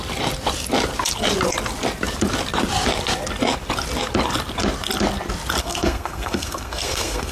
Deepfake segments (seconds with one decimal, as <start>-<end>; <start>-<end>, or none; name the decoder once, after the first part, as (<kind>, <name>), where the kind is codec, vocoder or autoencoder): 5.6-7.3 (codec, SNAC)